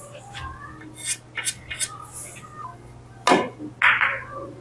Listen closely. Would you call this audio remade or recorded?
recorded